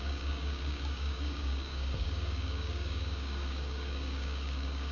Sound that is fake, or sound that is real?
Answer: fake